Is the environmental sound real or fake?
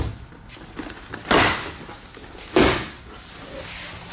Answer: real